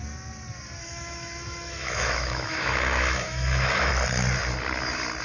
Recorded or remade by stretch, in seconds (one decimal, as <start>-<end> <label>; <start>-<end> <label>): 0.0-0.8 recorded; 0.8-3.9 remade; 3.9-5.2 recorded